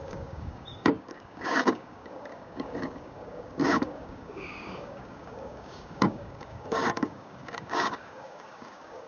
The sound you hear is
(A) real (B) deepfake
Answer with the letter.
B